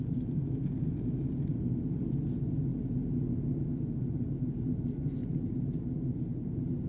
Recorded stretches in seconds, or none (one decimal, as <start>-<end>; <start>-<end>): 0.0-6.9